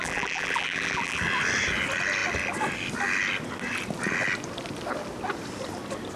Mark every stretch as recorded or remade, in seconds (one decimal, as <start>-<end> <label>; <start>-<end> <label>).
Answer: 0.0-1.2 remade; 1.2-6.2 recorded